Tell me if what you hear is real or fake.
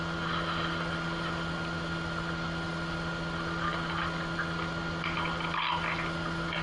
real